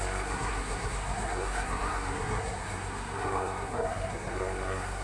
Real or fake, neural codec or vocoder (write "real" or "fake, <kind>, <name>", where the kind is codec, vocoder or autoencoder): fake, codec, SNAC